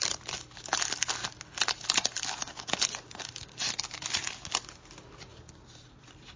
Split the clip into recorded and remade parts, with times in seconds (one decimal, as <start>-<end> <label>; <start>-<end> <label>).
0.0-6.4 recorded